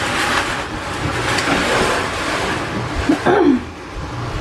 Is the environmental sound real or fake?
real